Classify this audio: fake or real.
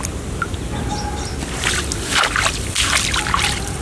real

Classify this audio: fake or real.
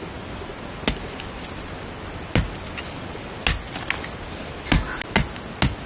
real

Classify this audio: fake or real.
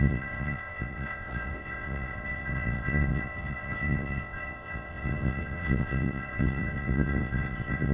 fake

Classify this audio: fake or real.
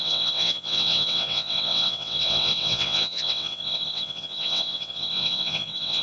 fake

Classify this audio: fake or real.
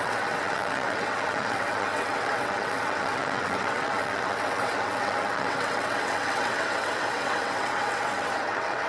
fake